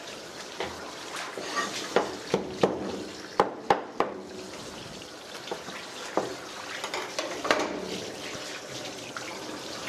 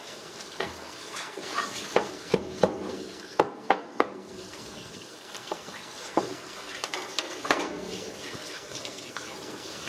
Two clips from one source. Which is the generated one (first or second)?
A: second